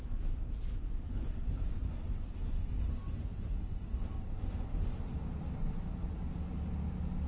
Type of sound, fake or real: real